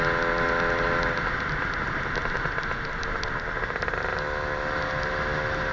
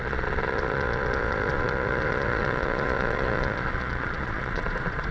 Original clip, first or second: first